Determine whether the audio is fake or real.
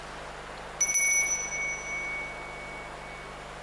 real